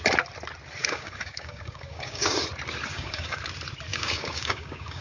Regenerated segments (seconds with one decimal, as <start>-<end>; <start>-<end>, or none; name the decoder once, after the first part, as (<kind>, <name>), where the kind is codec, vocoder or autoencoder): 0.8-2.4 (codec, DAC); 2.9-3.4; 3.9-5.0